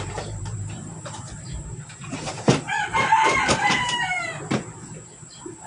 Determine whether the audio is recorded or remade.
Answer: remade